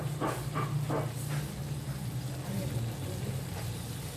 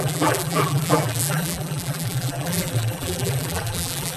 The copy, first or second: second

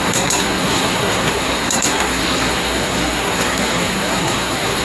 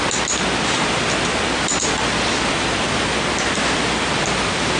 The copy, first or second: first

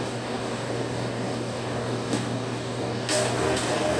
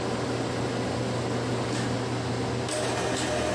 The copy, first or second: first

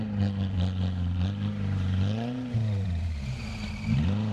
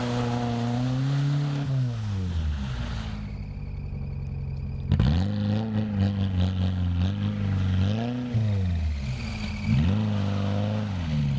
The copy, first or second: first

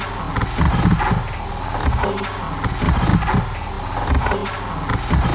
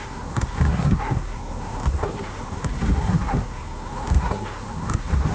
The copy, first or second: second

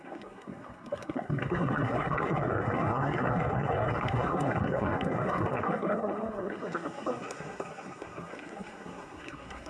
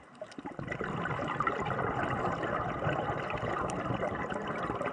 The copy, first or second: first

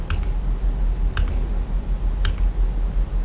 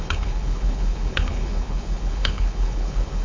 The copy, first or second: second